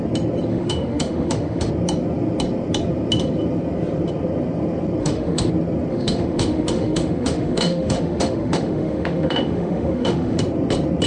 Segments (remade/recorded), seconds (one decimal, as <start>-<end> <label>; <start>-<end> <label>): 0.0-0.5 recorded; 0.5-1.7 remade; 1.7-5.0 recorded; 5.0-5.5 remade; 5.5-5.9 recorded; 5.9-10.4 remade; 10.4-11.1 recorded